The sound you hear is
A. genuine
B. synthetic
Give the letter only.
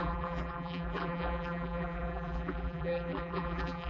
B